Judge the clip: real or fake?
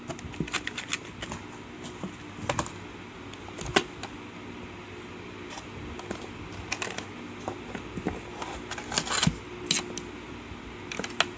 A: real